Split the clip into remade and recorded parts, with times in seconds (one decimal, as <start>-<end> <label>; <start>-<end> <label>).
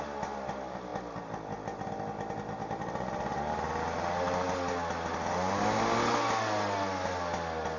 0.0-7.8 recorded